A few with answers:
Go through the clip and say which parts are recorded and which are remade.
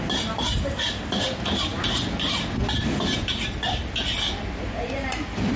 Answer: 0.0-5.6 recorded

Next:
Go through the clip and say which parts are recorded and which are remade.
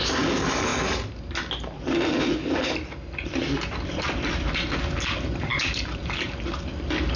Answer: 0.0-7.2 recorded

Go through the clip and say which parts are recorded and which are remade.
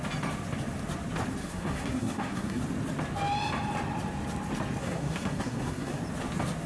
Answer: 0.0-1.4 recorded; 1.4-2.6 remade; 2.6-4.8 recorded; 4.8-6.0 remade; 6.0-6.7 recorded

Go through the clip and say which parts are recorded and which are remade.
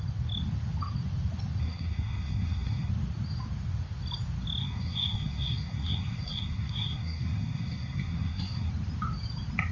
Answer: 0.0-1.6 recorded; 1.6-2.9 remade; 2.9-4.6 recorded; 4.6-8.7 remade; 8.7-9.7 recorded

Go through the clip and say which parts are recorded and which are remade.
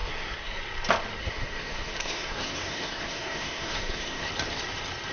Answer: 0.0-0.6 remade; 0.6-1.2 recorded; 1.2-4.3 remade; 4.3-5.1 recorded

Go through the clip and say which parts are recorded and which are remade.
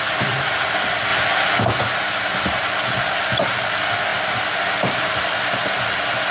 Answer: 0.0-6.3 recorded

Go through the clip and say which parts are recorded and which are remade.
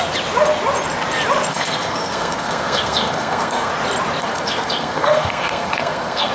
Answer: 0.0-1.5 recorded; 1.5-3.7 remade; 3.7-4.2 recorded; 4.2-6.3 remade